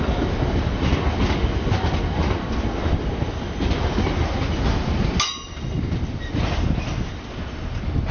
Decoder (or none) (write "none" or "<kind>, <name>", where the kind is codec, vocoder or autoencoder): none